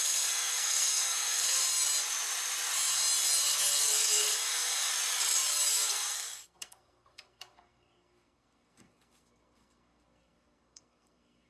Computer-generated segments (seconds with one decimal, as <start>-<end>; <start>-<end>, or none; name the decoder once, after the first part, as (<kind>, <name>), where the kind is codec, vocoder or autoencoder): 0.0-1.6 (codec, SNAC); 3.8-4.9; 5.7-11.5